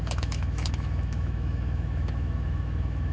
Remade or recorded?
remade